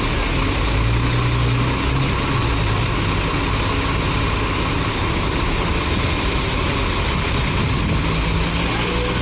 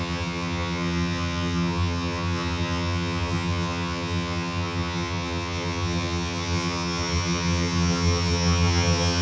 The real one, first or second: first